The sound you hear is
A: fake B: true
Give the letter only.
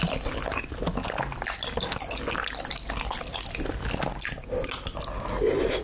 B